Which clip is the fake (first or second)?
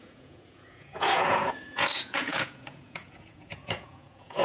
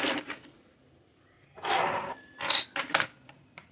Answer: first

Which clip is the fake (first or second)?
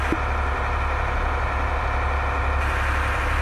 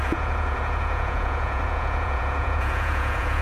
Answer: second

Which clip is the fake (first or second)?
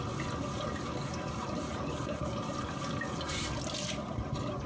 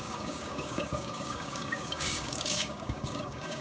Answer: second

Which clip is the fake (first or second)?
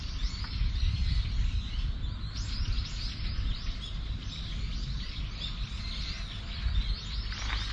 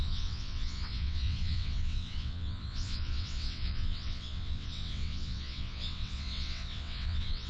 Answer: second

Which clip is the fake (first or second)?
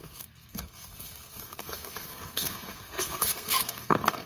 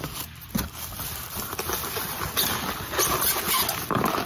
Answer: first